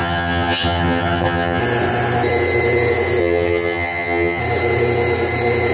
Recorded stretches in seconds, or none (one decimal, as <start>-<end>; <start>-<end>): 1.6-3.2; 4.4-5.7